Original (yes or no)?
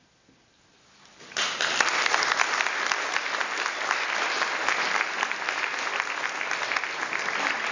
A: yes